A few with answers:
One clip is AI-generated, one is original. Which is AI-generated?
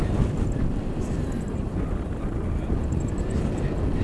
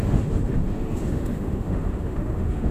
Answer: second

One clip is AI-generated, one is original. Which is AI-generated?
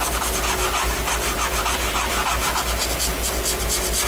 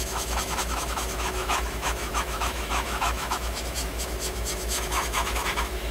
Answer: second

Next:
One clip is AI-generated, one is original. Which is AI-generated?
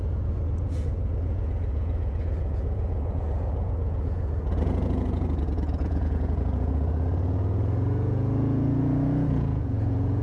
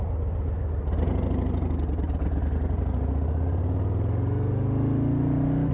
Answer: first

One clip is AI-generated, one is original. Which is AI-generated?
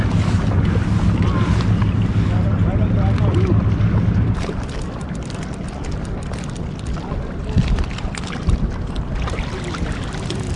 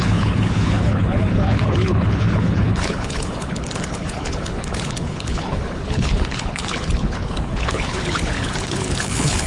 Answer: second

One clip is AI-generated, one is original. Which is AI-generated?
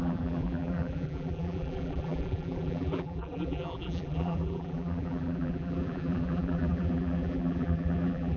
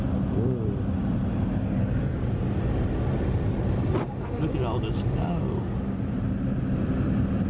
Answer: first